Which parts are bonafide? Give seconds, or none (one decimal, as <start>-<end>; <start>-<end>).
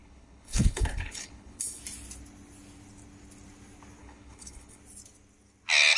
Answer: 1.8-4.0; 4.8-6.0